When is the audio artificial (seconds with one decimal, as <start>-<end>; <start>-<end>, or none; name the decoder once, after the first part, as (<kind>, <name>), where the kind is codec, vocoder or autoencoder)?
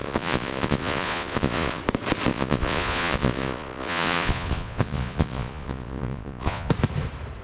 0.0-1.8 (vocoder, Vocos); 2.3-6.7